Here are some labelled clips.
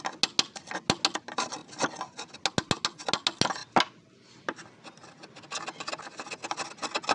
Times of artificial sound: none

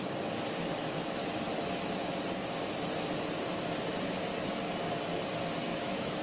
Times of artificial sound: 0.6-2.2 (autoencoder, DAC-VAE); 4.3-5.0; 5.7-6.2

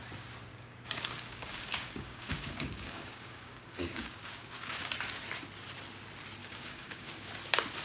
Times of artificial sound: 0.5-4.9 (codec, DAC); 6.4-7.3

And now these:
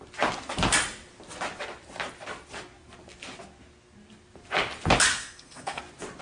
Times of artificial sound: 5.1-5.8 (codec, SNAC)

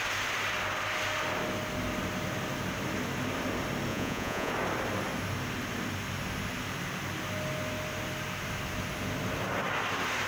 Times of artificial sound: 3.9-4.5 (vocoder, Vocos)